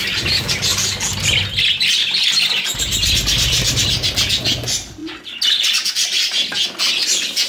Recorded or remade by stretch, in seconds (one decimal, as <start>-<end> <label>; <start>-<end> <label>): 0.0-7.5 recorded